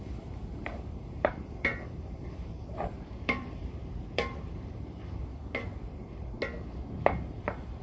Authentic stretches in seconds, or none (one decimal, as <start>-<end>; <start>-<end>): 0.0-0.5; 5.2-5.7; 6.4-7.8

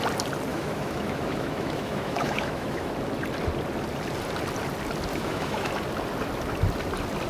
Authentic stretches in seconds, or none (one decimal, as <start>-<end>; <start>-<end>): 0.0-0.5; 2.9-5.1; 5.7-7.3

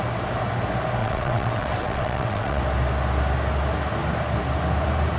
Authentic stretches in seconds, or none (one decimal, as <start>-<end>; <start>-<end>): 0.0-1.0; 2.6-5.2

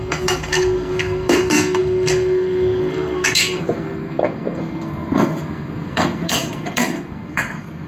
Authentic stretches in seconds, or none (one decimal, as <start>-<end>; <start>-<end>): none